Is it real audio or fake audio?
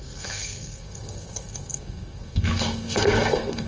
fake